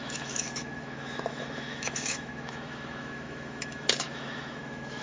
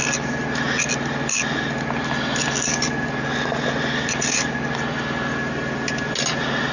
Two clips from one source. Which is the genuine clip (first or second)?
second